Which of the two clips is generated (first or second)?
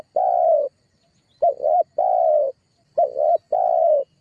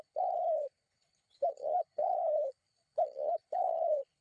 second